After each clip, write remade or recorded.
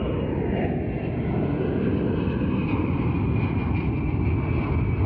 recorded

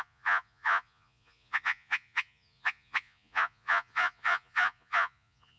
remade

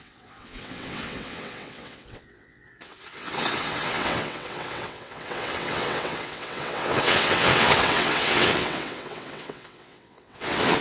remade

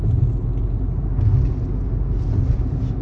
recorded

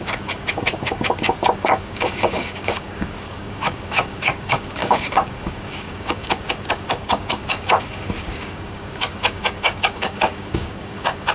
remade